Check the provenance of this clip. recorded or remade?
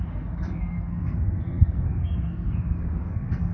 remade